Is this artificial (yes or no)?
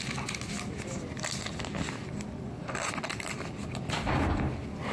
no